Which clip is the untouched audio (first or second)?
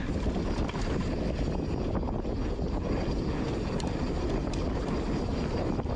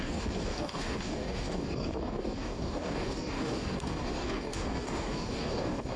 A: first